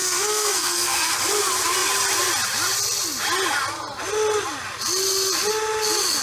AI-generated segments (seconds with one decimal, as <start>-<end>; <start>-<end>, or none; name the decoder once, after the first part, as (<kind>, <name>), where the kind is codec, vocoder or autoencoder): 0.0-1.1 (codec, SNAC)